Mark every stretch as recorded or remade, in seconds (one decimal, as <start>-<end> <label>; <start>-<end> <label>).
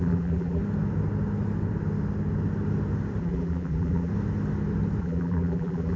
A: 0.0-0.6 remade; 0.6-3.2 recorded; 3.2-4.1 remade; 4.1-5.0 recorded; 5.0-6.0 remade